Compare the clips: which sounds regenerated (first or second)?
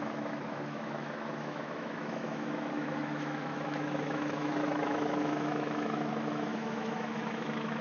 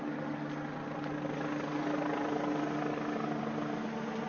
first